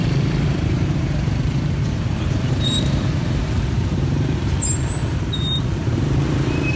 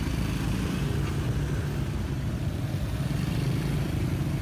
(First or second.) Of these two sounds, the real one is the second